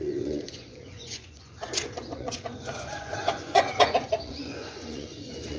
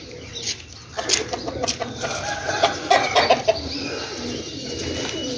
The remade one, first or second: first